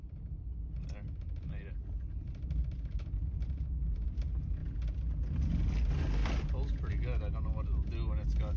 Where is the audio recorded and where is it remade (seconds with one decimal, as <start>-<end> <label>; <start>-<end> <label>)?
0.0-8.6 recorded